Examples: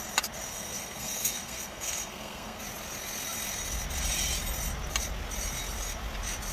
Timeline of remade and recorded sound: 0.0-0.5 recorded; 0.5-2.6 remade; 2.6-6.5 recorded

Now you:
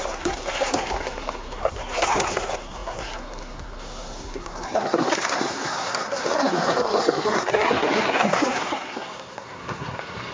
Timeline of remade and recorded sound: 0.0-10.3 remade